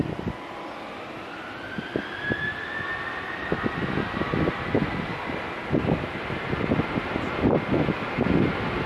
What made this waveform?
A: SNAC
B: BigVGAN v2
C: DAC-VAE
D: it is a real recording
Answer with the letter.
D